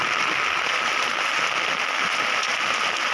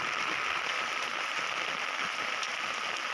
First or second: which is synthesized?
second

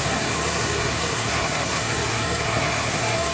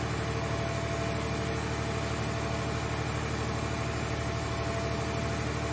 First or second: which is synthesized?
first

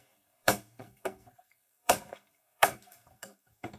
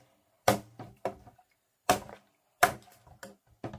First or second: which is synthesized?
first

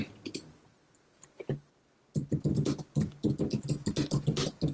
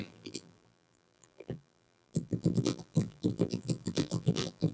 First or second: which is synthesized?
second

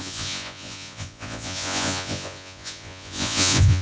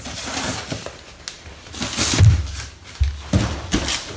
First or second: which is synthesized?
first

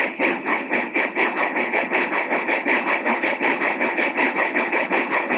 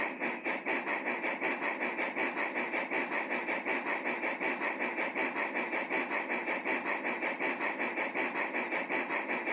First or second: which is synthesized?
first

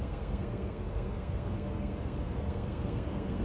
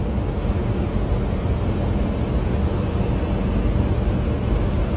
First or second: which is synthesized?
first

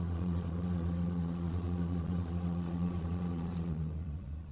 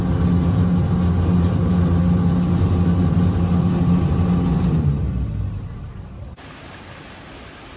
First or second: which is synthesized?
first